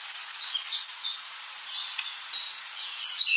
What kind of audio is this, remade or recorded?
remade